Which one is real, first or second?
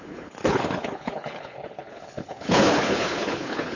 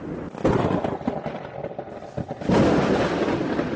second